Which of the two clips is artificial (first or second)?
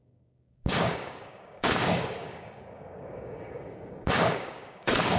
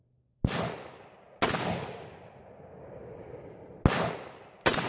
first